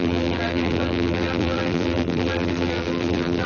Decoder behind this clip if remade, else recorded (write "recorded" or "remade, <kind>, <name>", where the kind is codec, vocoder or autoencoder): remade, vocoder, BigVGAN v2